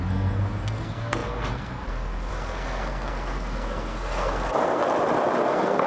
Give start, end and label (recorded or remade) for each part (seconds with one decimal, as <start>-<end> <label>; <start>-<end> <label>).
0.0-4.8 remade; 4.8-5.5 recorded; 5.5-5.9 remade